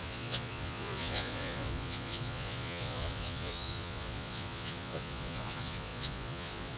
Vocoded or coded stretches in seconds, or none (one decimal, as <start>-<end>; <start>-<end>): 0.0-6.8